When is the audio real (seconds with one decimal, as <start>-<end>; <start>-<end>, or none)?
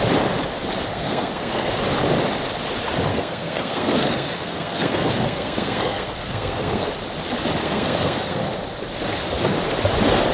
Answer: 0.0-0.9; 1.7-3.1; 6.9-7.6; 8.4-10.3